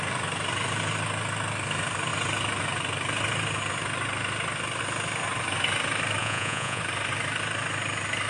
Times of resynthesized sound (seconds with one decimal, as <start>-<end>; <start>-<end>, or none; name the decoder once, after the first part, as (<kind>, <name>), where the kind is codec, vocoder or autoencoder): 6.2-6.8 (vocoder, Vocos)